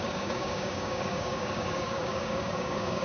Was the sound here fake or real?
fake